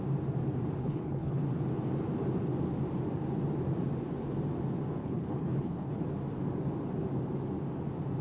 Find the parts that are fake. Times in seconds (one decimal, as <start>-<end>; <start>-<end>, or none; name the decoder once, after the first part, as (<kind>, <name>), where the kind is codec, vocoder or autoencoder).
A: 0.8-1.4 (codec, HILCodec); 5.0-6.0

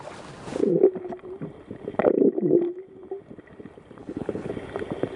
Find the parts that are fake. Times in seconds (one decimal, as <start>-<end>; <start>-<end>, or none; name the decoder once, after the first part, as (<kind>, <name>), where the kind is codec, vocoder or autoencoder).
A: 4.0-4.5 (codec, HILCodec)

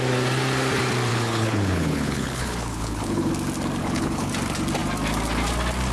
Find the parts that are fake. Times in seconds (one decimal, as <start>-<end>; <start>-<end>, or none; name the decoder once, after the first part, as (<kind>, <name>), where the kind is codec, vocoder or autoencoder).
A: 1.1-3.3 (codec, HILCodec); 3.8-4.3

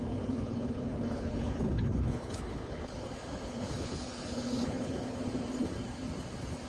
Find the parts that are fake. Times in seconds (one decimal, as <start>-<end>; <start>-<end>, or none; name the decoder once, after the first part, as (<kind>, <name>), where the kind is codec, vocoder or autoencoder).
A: 0.0-5.2 (codec, HILCodec)

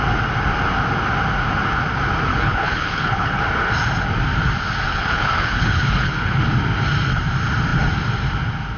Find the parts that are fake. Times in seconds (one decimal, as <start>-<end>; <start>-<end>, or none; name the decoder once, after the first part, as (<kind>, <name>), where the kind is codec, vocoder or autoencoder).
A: 2.3-3.4 (codec, HILCodec); 4.9-6.4

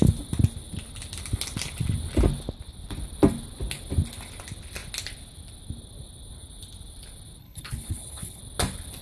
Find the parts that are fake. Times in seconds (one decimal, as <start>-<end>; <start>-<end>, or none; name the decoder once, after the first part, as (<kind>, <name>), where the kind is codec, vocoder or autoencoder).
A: 7.4-8.4 (codec, HILCodec)